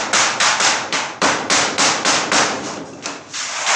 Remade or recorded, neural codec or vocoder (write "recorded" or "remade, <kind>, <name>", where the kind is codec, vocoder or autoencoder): remade, vocoder, BigVGAN v2